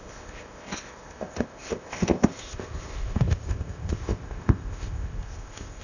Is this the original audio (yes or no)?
no